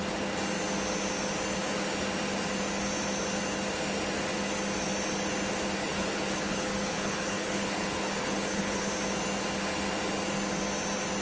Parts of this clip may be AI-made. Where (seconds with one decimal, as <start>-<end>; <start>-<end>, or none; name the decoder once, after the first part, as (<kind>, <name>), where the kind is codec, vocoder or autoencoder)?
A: 5.8-8.9 (codec, HILCodec)